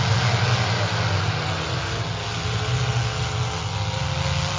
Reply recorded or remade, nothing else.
recorded